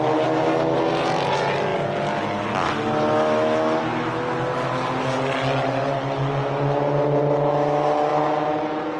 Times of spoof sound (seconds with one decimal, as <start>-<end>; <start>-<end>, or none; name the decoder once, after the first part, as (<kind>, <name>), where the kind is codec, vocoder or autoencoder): none